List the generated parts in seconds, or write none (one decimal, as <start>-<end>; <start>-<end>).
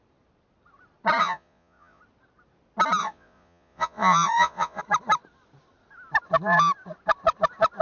1.2-2.0; 3.0-4.8